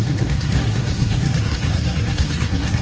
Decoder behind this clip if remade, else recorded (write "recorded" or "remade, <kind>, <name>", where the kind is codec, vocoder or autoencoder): remade, codec, SNAC